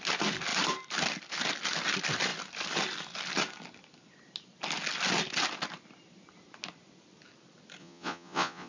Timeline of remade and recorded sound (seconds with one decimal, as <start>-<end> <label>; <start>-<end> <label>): 0.0-7.8 recorded; 7.8-8.7 remade